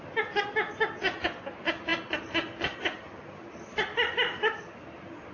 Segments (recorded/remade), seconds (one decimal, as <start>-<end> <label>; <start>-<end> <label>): 0.0-5.3 recorded